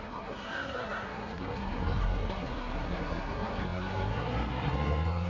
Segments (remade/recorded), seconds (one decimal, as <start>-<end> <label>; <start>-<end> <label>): 0.0-5.3 remade